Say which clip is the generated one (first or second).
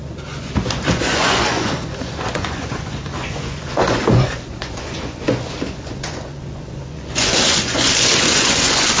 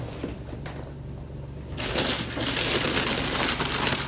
first